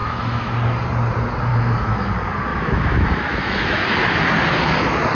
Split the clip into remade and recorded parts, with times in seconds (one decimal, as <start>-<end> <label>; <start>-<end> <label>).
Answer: 0.0-0.5 remade; 0.5-1.5 recorded; 1.5-2.1 remade; 2.1-2.5 recorded; 2.5-3.8 remade; 3.8-5.1 recorded